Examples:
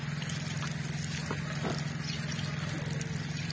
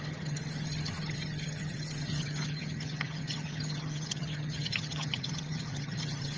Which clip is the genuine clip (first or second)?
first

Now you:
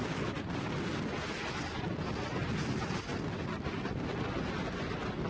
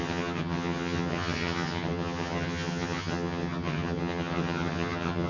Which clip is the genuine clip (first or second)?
first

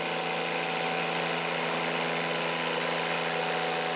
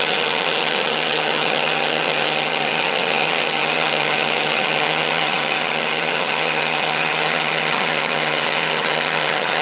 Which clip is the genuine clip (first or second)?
first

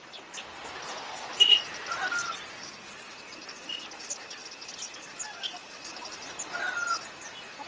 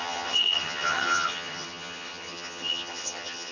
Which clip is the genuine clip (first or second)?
first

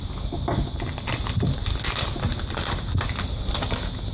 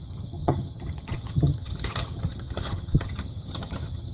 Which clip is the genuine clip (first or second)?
first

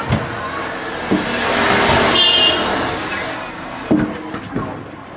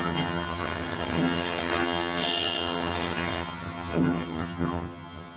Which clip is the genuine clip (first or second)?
first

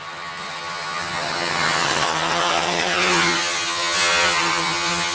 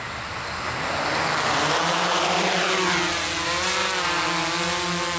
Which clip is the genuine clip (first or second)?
second